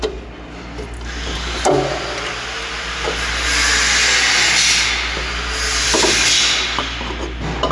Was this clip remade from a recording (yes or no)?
no